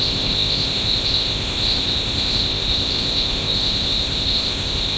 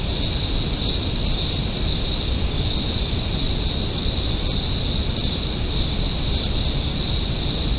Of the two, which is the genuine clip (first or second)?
second